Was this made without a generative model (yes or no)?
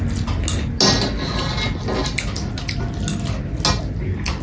yes